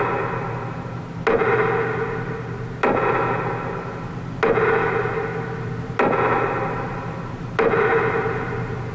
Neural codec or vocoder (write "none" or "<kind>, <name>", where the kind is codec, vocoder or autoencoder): none